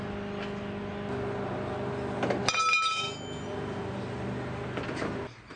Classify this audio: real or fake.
real